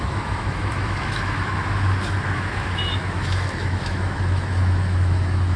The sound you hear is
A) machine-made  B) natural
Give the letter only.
A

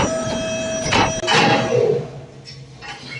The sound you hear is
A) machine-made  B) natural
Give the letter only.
B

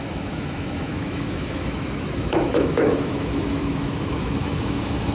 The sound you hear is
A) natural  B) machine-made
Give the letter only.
B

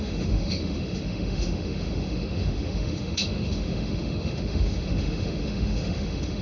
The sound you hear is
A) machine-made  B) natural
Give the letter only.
A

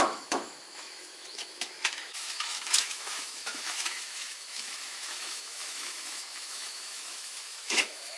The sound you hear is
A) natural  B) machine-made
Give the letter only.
B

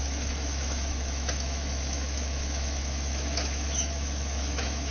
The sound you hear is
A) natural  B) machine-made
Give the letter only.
B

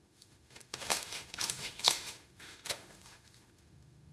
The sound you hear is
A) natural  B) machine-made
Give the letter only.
B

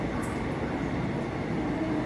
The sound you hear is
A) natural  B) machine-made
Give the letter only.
A